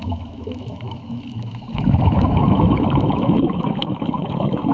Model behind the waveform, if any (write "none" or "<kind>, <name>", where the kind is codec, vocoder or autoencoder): autoencoder, DAC-VAE